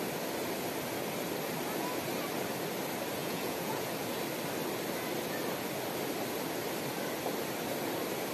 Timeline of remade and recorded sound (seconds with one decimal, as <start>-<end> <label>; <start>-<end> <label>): 0.0-3.2 recorded; 3.2-3.9 remade; 3.9-8.3 recorded